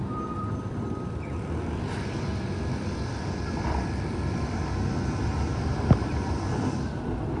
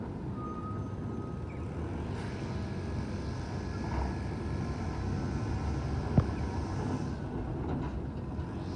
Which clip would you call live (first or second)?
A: second